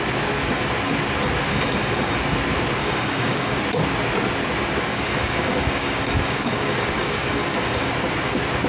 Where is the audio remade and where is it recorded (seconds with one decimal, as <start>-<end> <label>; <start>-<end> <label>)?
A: 0.0-1.5 recorded; 1.5-2.2 remade; 2.2-2.8 recorded; 2.8-3.6 remade; 3.6-4.9 recorded; 4.9-7.9 remade; 7.9-8.7 recorded